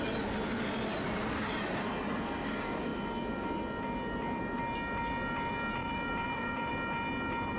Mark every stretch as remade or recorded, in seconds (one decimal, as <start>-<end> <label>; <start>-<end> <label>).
0.0-5.8 recorded; 5.8-6.7 remade; 6.7-7.6 recorded